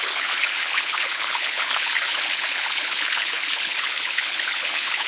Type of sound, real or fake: fake